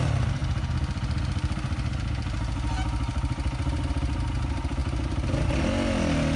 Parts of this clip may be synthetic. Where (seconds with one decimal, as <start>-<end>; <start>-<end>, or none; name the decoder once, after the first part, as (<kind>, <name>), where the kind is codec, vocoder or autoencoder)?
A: none